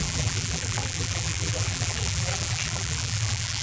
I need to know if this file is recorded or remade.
remade